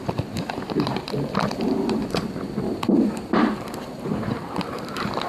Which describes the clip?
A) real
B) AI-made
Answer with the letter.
B